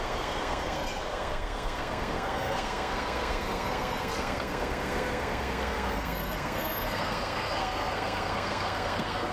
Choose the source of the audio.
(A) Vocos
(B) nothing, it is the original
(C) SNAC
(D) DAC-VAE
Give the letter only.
C